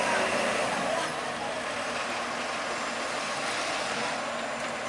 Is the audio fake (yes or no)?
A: no